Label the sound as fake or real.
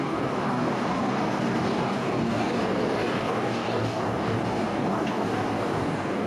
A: fake